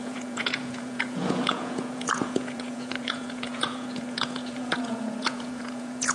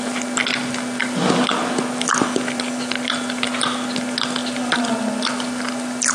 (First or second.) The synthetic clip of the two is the first